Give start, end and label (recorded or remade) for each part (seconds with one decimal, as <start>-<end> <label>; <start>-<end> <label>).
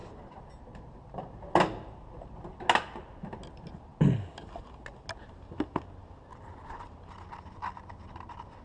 0.0-8.6 recorded